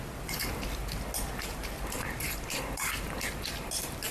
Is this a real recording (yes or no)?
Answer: yes